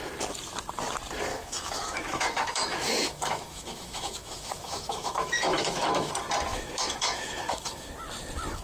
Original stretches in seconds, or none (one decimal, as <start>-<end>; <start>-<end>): 0.0-1.3; 6.1-6.5; 7.9-8.6